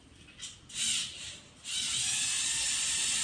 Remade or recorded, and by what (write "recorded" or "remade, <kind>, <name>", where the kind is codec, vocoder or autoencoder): recorded